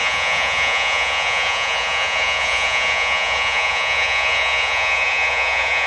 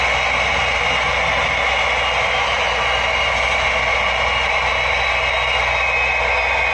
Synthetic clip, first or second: first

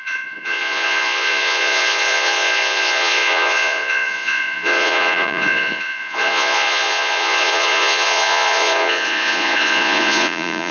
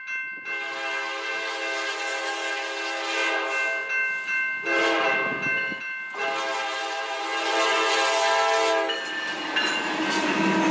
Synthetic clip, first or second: first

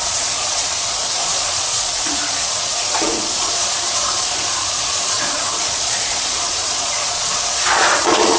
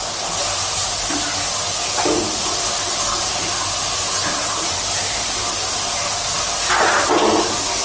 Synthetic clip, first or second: first